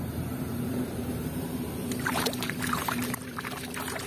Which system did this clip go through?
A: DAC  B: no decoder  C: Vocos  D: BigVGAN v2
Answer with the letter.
D